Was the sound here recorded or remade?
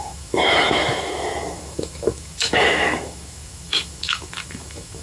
remade